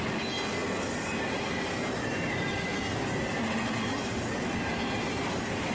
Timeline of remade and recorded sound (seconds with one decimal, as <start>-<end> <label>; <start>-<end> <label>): 0.0-5.7 recorded